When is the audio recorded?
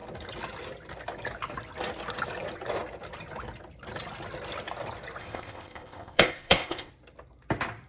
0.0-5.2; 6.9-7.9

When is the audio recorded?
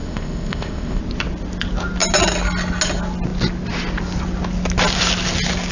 1.0-5.7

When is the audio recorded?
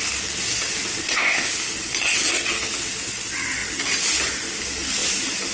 0.0-1.0; 1.5-5.5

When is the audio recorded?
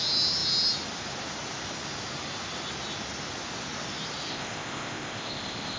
0.0-4.3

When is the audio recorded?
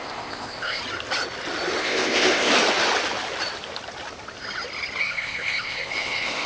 0.8-1.8; 2.5-5.0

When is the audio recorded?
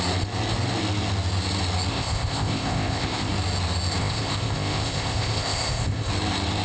0.0-1.9; 3.3-4.0; 6.1-6.6